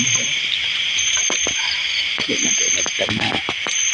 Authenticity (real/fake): fake